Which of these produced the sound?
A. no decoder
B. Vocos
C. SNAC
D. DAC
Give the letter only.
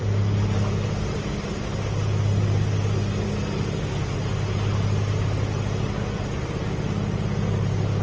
A